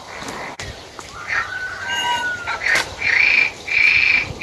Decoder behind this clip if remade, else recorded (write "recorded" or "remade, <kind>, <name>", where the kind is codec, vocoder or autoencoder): recorded